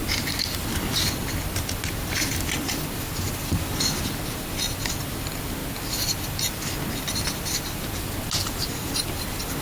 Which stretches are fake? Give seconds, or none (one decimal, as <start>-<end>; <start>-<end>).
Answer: none